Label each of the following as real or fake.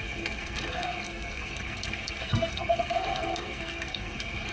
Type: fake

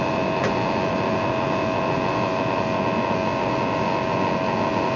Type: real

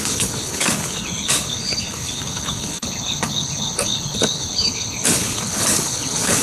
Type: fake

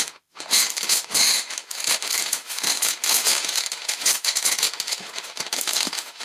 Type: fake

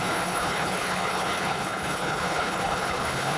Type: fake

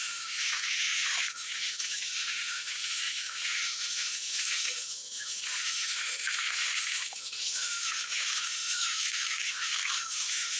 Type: fake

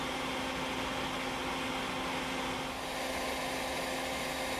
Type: real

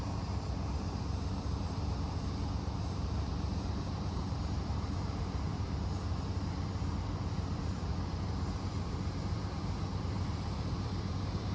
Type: fake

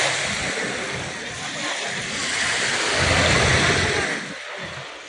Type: real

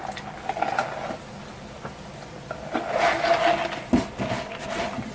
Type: real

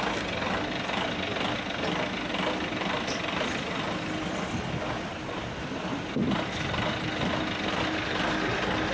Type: real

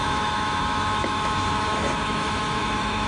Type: fake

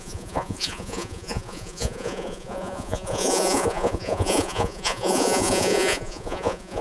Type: fake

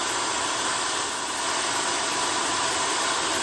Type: real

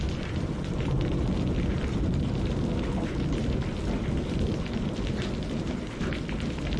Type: fake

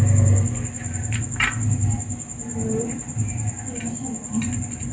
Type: real